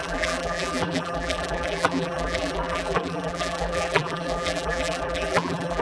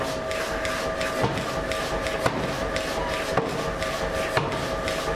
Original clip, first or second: second